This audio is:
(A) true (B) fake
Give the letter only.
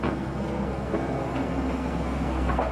B